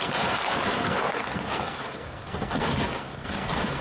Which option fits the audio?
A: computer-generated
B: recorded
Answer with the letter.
A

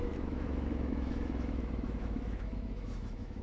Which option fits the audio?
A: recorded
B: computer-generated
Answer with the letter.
B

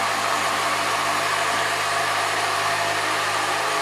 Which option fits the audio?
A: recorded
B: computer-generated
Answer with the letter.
A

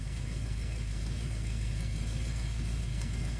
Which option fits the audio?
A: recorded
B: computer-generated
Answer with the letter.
B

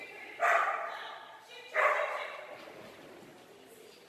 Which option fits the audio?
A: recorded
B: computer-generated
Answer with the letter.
A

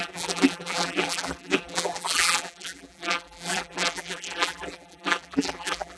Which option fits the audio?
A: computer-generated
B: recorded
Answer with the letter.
A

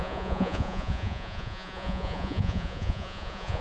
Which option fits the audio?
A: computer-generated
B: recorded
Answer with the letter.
A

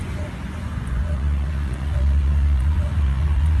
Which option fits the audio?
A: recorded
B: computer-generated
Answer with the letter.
B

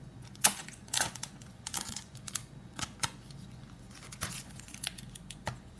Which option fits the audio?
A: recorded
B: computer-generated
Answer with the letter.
B